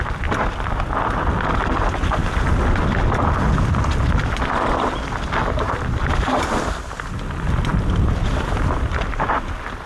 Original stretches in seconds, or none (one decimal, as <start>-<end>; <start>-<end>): 0.0-2.2; 3.3-7.7; 9.4-9.9

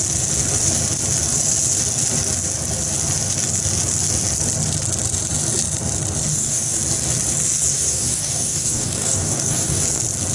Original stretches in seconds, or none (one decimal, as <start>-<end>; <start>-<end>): 0.0-6.3; 6.8-7.7; 9.8-10.3

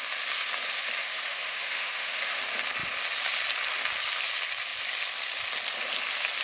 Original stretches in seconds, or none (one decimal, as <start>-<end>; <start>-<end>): 0.0-1.0; 2.4-6.4

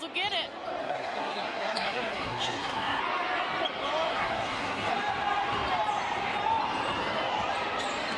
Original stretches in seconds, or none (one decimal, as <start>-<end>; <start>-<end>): 0.0-0.8; 3.0-4.1; 4.9-8.2